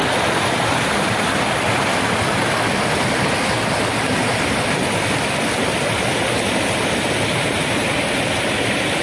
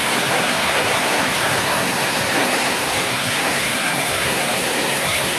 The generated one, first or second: second